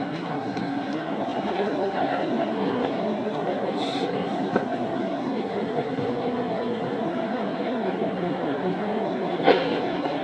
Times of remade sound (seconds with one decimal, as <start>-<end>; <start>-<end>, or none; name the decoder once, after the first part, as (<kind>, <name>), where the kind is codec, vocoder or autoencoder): 0.0-10.2 (codec, SNAC)